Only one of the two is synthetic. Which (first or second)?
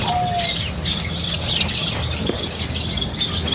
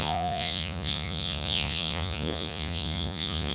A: second